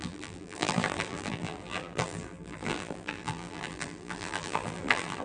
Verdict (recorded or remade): remade